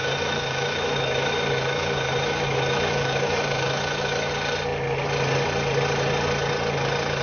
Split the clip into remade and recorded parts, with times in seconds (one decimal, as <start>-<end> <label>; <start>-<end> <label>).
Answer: 0.0-4.3 remade; 4.3-7.2 recorded